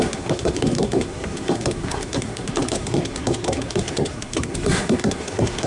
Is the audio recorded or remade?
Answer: remade